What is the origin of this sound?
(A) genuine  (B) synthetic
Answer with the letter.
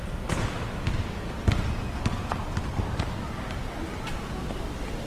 A